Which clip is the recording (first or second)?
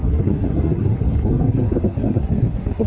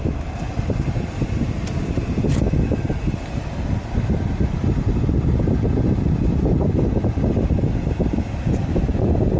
second